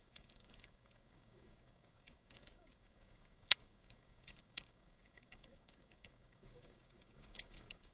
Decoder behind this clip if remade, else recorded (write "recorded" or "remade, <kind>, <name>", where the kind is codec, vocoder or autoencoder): remade, codec, DAC